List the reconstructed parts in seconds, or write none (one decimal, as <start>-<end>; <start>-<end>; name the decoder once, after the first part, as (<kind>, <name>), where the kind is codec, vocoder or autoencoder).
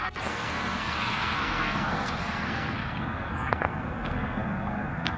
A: 0.0-5.2 (codec, SNAC)